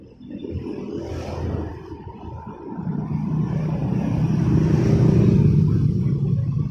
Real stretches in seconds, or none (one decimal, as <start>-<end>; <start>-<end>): 0.0-1.7; 3.2-3.8; 4.4-6.7